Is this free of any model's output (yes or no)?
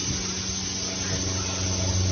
yes